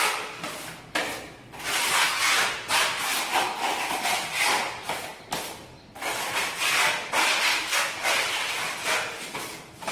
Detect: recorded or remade recorded